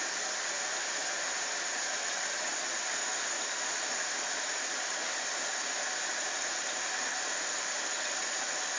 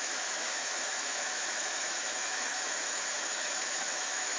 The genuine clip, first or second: first